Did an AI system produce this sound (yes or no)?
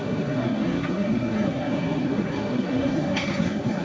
yes